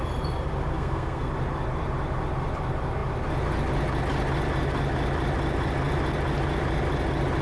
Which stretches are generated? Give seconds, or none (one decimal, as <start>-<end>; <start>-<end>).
0.7-1.3